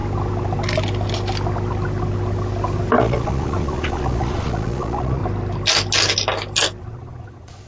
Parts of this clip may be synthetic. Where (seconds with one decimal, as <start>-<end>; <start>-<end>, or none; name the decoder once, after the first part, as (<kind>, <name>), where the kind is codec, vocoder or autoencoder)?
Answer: 3.0-5.2 (vocoder, Vocos); 6.8-7.7